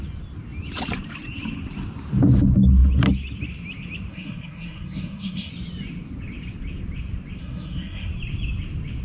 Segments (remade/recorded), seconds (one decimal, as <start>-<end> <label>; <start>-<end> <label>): 0.0-4.1 recorded; 4.1-5.5 remade; 5.5-7.4 recorded; 7.4-8.1 remade; 8.1-9.0 recorded